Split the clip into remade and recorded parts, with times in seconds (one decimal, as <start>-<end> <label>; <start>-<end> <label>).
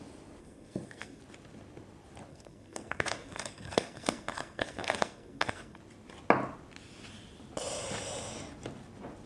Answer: 0.0-0.4 recorded; 0.4-1.2 remade; 1.2-2.3 recorded; 2.3-5.8 remade; 5.8-9.3 recorded